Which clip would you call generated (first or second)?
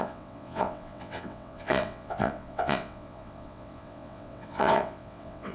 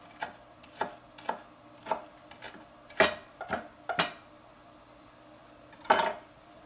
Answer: first